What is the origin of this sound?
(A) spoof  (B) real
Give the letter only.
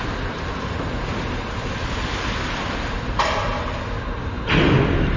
B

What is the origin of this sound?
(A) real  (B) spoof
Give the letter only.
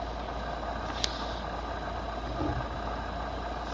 A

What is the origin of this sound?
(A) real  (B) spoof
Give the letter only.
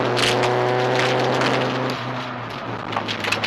A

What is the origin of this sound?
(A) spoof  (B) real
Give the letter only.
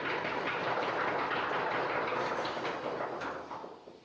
B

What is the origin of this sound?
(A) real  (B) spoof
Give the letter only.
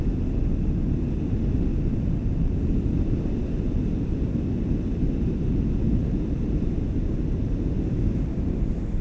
A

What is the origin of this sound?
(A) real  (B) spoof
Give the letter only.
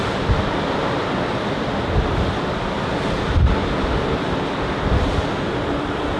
A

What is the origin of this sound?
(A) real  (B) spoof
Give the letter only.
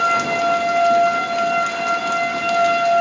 A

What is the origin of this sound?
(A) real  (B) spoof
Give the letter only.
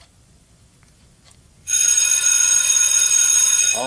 B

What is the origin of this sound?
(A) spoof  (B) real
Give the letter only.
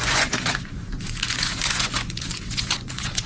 A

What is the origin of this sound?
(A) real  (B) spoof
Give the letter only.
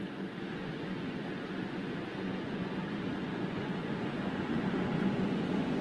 B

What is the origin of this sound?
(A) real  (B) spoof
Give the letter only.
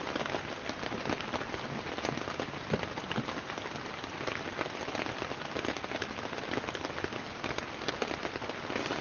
A